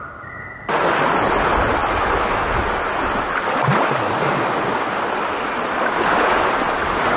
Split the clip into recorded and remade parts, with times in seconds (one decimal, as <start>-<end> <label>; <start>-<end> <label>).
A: 0.0-7.2 recorded